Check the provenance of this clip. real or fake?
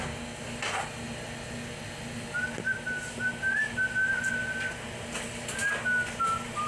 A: real